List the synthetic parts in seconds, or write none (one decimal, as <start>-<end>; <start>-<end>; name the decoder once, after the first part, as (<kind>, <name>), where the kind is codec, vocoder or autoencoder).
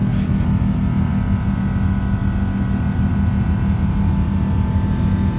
none